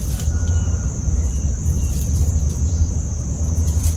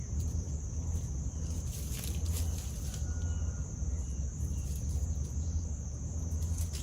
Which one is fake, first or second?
first